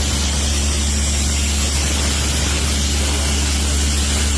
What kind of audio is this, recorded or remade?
recorded